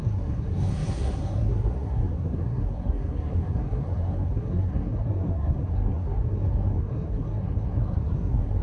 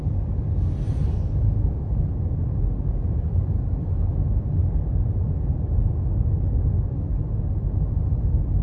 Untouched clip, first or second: second